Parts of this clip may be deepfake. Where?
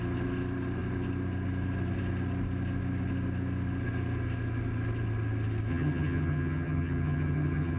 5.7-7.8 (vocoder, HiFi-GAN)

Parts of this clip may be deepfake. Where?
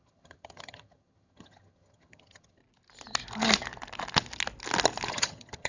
0.0-2.6 (vocoder, HiFi-GAN); 5.1-5.7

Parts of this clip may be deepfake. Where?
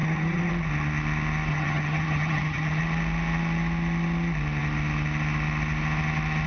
0.0-0.5 (vocoder, HiFi-GAN); 1.5-2.8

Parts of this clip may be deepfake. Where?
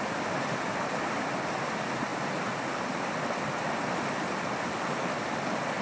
none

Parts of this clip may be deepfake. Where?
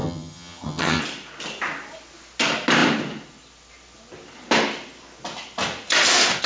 0.0-1.0 (vocoder, HiFi-GAN)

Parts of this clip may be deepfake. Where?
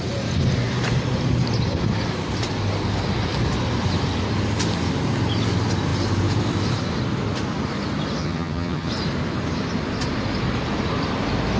8.2-8.9 (vocoder, HiFi-GAN)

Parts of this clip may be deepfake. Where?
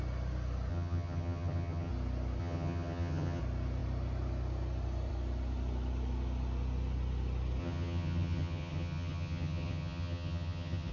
0.7-1.9 (vocoder, HiFi-GAN); 2.4-3.4; 7.6-10.9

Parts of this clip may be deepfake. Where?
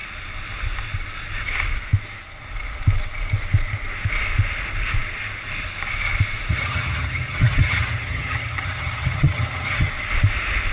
6.5-9.9 (vocoder, HiFi-GAN)